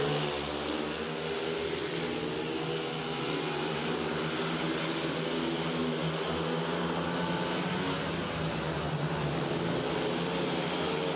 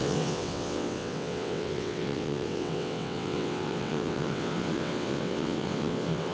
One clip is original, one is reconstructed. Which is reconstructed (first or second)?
second